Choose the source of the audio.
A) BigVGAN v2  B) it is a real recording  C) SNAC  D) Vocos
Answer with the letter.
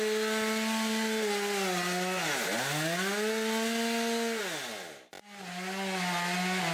B